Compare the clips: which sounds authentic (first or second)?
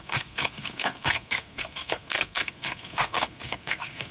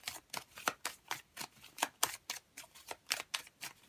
second